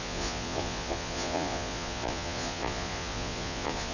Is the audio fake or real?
fake